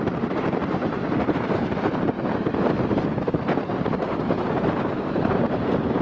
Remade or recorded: remade